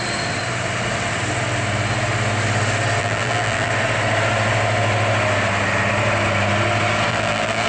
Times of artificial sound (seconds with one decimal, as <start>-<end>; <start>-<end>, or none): 3.0-3.7; 7.1-7.7